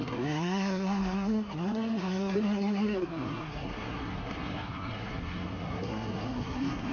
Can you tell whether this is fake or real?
fake